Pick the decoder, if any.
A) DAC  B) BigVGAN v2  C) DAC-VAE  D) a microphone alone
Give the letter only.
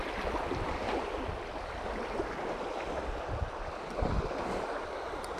D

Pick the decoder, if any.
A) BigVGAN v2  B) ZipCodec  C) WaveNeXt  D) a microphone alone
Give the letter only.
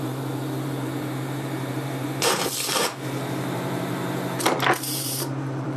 A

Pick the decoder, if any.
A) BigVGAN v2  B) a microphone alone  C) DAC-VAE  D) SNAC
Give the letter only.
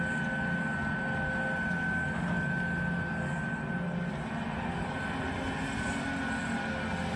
B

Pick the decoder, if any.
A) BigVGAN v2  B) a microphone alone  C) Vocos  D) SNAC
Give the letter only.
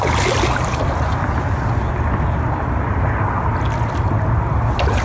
B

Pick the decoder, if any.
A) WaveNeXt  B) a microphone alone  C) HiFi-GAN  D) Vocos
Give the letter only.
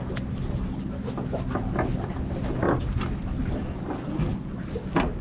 B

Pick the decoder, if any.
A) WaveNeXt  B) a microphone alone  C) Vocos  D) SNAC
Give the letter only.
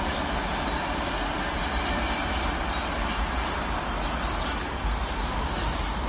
B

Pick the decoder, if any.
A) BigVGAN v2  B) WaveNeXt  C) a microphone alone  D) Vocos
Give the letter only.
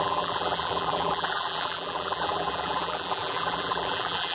A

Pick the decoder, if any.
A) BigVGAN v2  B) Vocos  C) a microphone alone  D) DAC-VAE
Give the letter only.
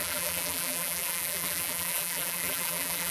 A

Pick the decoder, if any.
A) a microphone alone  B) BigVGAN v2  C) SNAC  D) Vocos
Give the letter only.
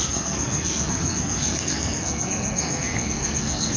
C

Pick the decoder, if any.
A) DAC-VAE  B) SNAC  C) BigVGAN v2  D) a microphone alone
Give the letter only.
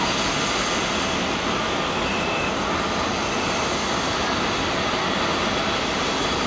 D